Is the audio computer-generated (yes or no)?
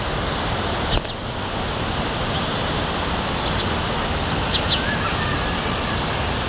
no